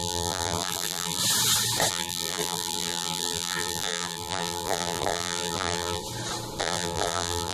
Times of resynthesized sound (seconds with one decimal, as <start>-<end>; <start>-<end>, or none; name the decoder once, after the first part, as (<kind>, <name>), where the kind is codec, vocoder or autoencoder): 0.0-1.2 (vocoder, BigVGAN v2); 1.9-6.0; 6.6-7.5